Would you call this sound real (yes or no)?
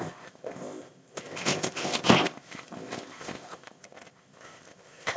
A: no